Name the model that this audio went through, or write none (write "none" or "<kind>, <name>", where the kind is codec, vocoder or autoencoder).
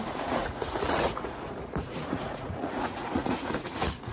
vocoder, Vocos